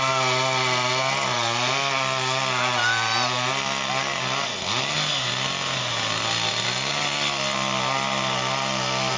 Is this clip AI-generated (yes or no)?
no